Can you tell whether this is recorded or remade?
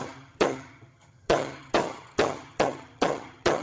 remade